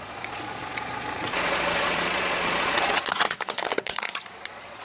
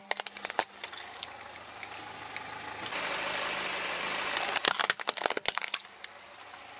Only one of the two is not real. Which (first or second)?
first